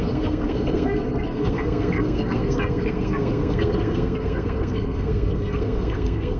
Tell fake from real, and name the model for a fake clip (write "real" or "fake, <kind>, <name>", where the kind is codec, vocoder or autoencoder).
fake, codec, SNAC